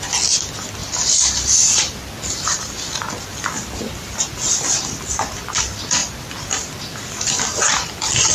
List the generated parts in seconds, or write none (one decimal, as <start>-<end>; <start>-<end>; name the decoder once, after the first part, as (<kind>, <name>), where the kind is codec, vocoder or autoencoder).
0.8-2.2 (vocoder, BigVGAN v2); 6.0-7.4